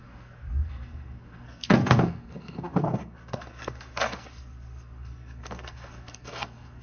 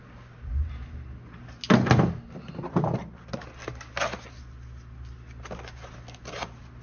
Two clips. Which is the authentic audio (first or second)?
second